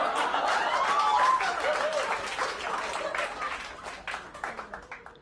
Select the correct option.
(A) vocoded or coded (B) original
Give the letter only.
B